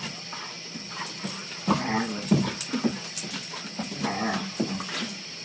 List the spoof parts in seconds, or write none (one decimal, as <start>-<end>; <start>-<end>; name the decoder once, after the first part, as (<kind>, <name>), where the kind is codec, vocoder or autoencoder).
none